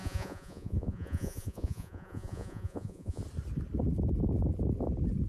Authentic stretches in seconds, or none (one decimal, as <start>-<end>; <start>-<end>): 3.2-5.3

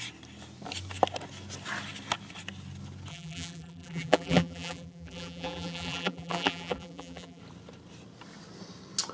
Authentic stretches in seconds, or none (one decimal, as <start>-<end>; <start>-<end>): 0.0-3.1; 7.4-9.1

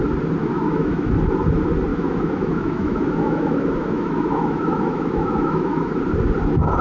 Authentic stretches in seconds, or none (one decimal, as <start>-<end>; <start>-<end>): 0.0-0.4; 1.1-1.9; 6.0-6.8